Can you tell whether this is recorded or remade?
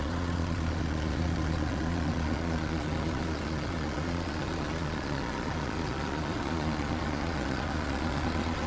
remade